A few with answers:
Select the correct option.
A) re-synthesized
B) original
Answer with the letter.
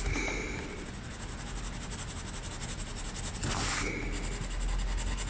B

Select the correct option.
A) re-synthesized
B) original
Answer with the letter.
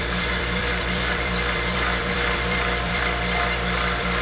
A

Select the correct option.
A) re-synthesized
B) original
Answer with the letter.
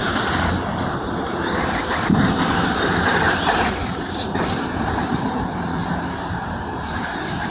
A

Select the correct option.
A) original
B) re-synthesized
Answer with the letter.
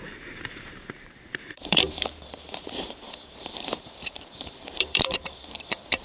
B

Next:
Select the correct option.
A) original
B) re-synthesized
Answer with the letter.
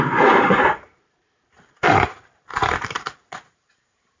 B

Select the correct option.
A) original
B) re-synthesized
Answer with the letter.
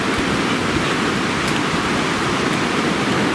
B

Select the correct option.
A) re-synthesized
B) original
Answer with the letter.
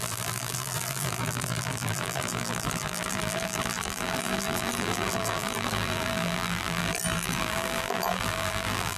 A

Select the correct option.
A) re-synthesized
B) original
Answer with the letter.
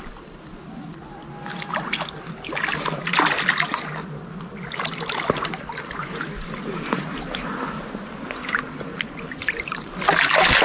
B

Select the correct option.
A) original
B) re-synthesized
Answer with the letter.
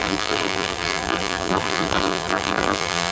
B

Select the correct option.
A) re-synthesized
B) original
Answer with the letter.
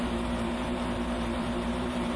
A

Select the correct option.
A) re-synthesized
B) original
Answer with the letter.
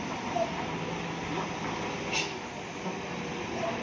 A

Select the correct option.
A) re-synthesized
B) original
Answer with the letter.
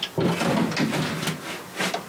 B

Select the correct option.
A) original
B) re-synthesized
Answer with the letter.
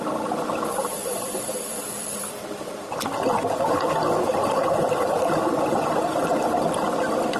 B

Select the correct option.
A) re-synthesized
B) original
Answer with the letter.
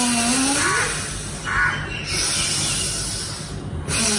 B